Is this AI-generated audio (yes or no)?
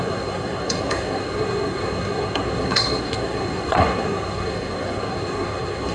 yes